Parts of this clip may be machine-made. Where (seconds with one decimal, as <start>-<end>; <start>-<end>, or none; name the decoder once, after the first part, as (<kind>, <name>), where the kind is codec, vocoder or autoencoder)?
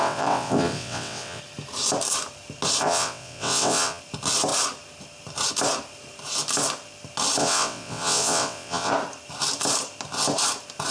0.0-1.4 (vocoder, WaveNeXt); 2.8-4.0; 7.4-8.9